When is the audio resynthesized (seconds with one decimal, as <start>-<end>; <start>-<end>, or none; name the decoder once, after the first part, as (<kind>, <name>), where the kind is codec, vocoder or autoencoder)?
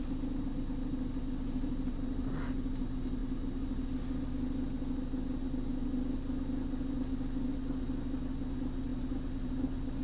none